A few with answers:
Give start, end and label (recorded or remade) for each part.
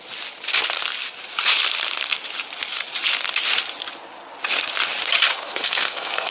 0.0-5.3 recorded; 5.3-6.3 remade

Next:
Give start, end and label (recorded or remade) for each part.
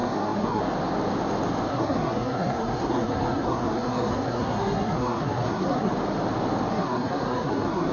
0.0-0.6 remade; 0.6-1.7 recorded; 1.7-5.9 remade; 5.9-6.7 recorded; 6.7-7.9 remade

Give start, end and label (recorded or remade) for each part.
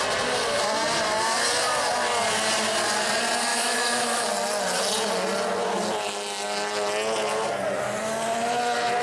0.0-3.5 recorded; 3.5-4.3 remade; 4.3-9.0 recorded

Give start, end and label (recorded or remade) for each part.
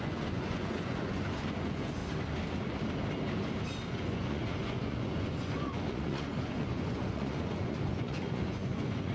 0.0-2.0 remade; 2.0-3.9 recorded; 3.9-9.1 remade